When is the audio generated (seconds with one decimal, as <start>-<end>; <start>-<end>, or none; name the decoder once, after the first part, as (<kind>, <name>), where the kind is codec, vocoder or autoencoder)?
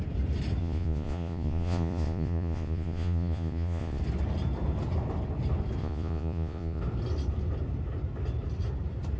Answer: 0.6-4.0 (vocoder, Vocos); 5.8-6.8